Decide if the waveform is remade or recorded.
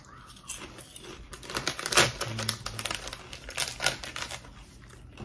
recorded